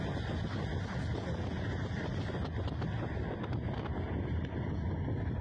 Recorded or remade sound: recorded